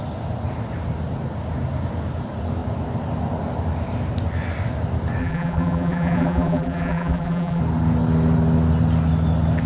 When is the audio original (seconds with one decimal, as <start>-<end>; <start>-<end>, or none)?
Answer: 0.0-5.2; 7.6-9.7